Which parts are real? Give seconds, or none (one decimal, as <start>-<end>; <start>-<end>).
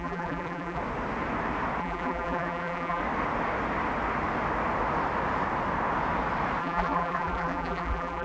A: 0.8-1.8; 3.0-6.6